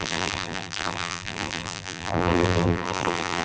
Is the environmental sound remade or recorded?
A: remade